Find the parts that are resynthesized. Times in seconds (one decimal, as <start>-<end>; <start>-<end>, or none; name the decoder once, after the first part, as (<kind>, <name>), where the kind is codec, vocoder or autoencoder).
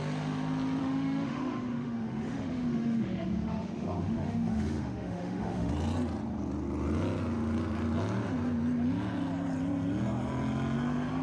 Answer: 0.8-5.7 (autoencoder, DAC-VAE)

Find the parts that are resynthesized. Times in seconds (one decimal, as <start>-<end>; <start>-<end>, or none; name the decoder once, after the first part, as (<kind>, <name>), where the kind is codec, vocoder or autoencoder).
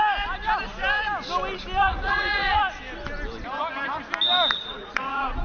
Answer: 1.8-2.6 (vocoder, Vocos); 4.7-5.4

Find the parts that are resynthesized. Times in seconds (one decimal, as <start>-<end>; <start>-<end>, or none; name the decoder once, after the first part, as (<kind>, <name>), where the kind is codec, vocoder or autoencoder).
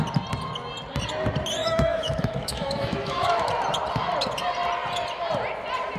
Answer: 1.6-3.5 (autoencoder, DAC-VAE)